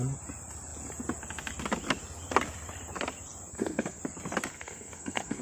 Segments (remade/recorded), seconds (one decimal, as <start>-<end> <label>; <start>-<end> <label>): 0.0-3.5 recorded; 3.5-4.0 remade; 4.0-4.5 recorded; 4.5-5.4 remade